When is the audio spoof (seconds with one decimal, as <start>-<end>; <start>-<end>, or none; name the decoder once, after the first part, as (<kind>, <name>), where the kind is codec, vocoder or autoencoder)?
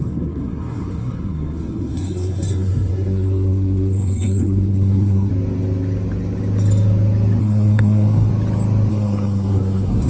0.0-5.3 (codec, SNAC); 7.4-8.3; 8.9-10.1